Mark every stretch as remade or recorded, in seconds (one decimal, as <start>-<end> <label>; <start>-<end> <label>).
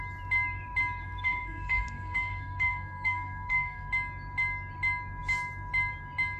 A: 0.0-1.0 recorded; 1.0-3.9 remade; 3.9-6.4 recorded